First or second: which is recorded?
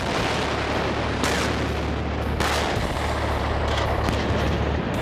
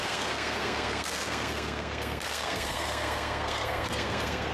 first